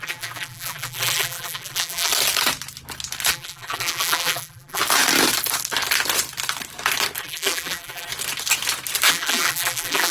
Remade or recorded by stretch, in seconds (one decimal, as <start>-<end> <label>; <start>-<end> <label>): 0.0-2.1 remade; 2.1-3.3 recorded; 3.3-4.8 remade; 4.8-7.2 recorded; 7.2-8.1 remade; 8.1-9.1 recorded; 9.1-10.1 remade